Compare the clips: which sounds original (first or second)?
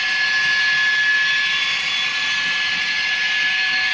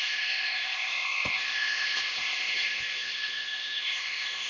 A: first